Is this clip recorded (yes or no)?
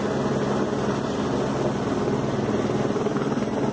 yes